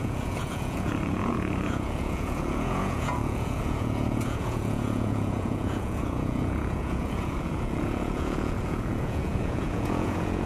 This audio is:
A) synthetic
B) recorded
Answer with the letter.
A